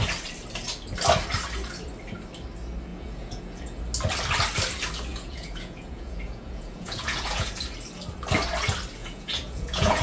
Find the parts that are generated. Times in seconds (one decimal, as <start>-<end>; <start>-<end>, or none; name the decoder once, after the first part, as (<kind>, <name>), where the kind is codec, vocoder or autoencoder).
2.9-3.8 (vocoder, Vocos); 5.1-7.6; 9.0-10.0